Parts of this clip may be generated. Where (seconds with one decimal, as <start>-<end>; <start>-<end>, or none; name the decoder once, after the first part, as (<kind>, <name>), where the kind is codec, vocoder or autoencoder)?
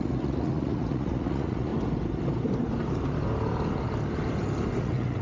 0.0-1.7 (vocoder, Vocos); 4.8-5.2